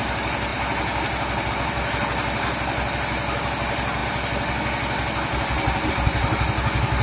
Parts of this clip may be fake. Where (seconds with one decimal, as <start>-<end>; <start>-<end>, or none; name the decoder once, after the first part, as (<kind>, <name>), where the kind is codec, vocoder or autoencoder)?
none